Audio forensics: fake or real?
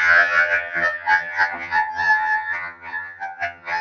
fake